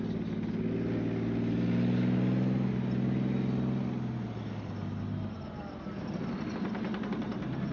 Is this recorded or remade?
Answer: recorded